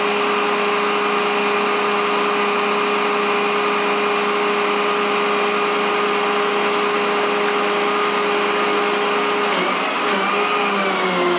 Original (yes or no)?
yes